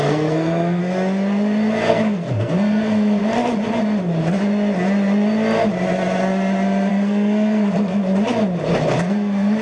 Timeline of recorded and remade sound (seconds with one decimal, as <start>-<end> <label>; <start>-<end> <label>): 0.0-0.8 remade; 0.8-1.9 recorded; 1.9-3.2 remade; 3.2-6.9 recorded; 6.9-8.0 remade; 8.0-9.0 recorded; 9.0-9.6 remade